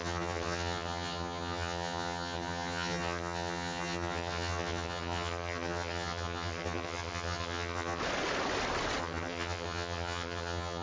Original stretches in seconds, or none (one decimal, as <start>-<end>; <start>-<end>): 8.0-9.0